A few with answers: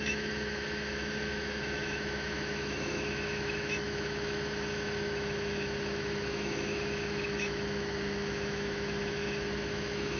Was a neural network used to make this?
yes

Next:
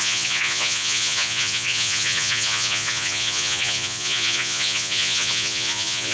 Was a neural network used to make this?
yes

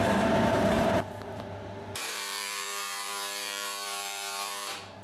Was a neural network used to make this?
yes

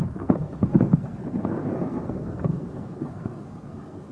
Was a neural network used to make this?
yes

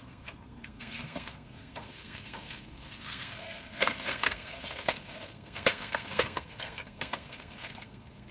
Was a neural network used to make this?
yes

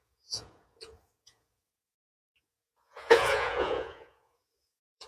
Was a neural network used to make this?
yes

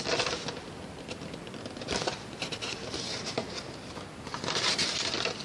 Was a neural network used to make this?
no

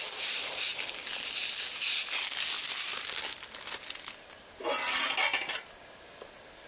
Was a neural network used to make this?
no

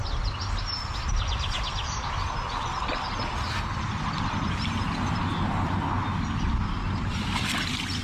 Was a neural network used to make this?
no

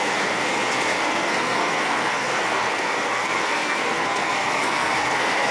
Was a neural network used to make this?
yes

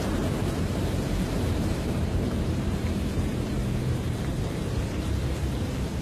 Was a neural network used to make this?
yes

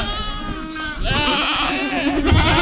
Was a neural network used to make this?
no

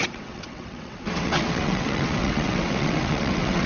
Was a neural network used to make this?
yes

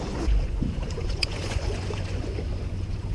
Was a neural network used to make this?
yes